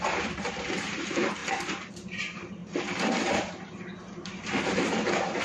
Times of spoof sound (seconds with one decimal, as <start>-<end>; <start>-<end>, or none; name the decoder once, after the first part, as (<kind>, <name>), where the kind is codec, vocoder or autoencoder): 0.0-5.4 (vocoder, BigVGAN v2)